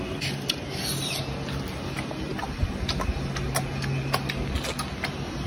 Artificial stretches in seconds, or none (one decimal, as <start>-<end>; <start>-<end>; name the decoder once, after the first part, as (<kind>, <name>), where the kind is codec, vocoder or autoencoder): none